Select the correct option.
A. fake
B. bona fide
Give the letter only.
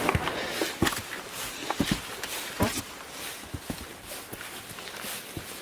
B